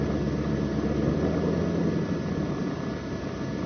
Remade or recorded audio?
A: recorded